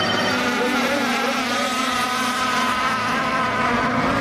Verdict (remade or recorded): recorded